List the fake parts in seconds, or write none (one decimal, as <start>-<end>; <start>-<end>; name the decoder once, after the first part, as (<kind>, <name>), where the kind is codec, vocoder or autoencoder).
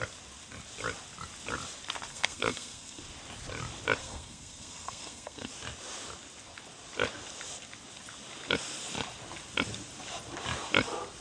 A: 2.1-3.0 (codec, SNAC); 4.0-5.5